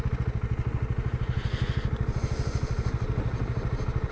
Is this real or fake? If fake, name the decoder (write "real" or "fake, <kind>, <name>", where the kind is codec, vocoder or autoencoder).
real